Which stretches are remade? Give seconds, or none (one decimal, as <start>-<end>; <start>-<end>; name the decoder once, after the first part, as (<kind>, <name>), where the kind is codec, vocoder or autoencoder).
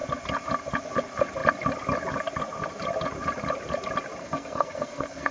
4.2-5.3 (codec, SNAC)